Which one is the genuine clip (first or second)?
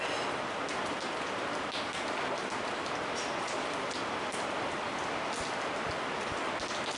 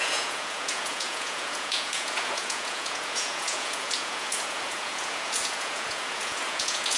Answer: first